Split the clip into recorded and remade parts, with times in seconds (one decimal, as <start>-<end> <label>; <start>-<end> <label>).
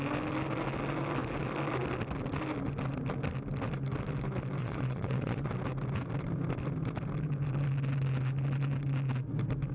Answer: 0.0-4.6 recorded; 4.6-5.5 remade; 5.5-9.7 recorded